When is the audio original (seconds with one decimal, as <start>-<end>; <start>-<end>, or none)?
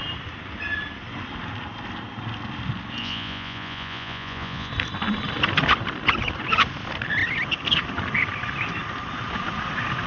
0.0-3.0; 4.7-10.1